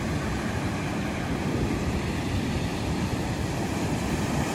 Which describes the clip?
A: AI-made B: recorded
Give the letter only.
A